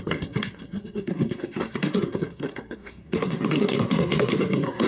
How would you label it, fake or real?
fake